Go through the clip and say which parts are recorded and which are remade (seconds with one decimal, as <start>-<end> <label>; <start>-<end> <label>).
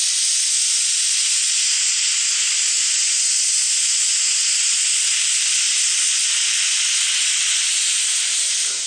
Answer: 0.0-8.9 recorded